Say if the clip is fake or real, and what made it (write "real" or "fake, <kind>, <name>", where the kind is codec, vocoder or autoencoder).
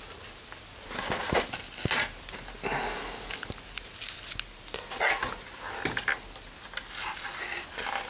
real